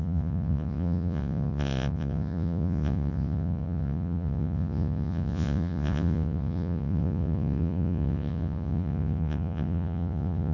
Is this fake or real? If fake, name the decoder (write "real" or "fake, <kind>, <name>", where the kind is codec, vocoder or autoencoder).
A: fake, vocoder, Vocos